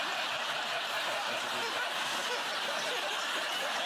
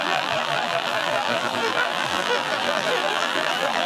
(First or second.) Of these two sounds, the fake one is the second